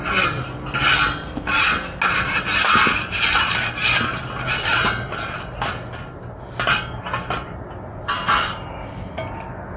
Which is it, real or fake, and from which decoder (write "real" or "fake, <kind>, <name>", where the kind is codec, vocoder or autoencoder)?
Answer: real